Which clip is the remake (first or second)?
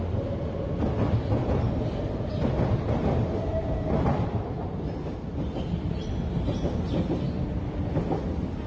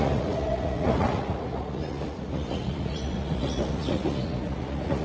second